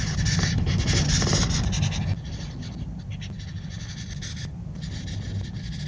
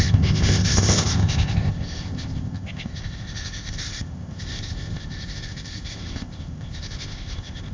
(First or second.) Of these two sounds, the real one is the first